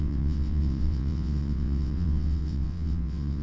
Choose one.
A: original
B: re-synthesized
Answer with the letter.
B